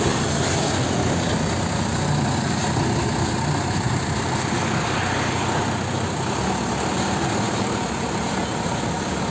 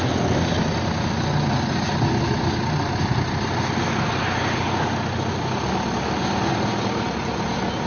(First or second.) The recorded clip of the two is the second